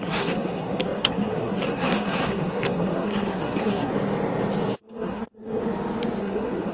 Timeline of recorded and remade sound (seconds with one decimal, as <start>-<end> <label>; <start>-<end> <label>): 0.0-3.9 remade; 3.9-4.8 recorded; 4.8-5.6 remade; 5.6-6.2 recorded; 6.2-6.7 remade